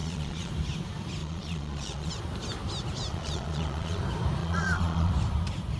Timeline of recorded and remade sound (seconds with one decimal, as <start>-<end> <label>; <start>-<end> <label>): 0.0-0.5 remade; 0.5-1.2 recorded; 1.2-2.1 remade; 2.1-3.1 recorded; 3.1-4.0 remade; 4.0-4.4 recorded; 4.4-5.1 remade; 5.1-5.8 recorded

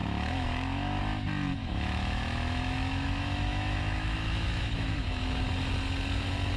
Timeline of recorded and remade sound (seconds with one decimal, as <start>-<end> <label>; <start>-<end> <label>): 0.0-1.0 remade; 1.0-1.6 recorded; 1.6-5.5 remade; 5.5-6.6 recorded

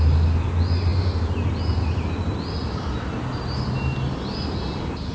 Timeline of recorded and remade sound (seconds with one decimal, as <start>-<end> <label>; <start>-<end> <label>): 0.0-5.1 recorded

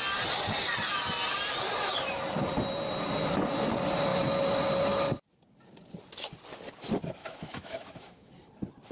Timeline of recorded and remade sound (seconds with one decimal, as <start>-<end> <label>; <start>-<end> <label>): 0.0-7.2 recorded; 7.2-8.3 remade; 8.3-8.9 recorded

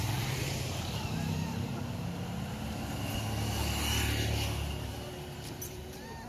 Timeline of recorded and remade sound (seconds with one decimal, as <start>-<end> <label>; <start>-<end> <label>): 0.0-1.7 remade; 1.7-5.5 recorded; 5.5-6.3 remade

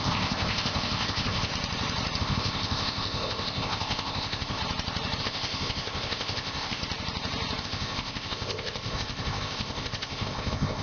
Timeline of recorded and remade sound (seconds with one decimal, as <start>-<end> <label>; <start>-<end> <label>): 0.0-1.5 remade; 1.5-2.2 recorded; 2.2-4.6 remade; 4.6-5.2 recorded; 5.2-6.8 remade; 6.8-7.6 recorded; 7.6-10.8 remade